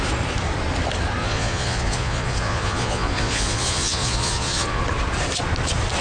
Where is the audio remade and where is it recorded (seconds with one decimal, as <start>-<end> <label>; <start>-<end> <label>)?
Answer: 0.0-1.2 recorded; 1.2-4.8 remade; 4.8-6.0 recorded